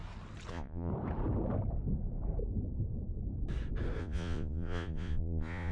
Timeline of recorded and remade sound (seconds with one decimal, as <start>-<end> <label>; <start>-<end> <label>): 0.0-0.5 recorded; 0.5-0.9 remade; 0.9-4.0 recorded; 4.0-5.7 remade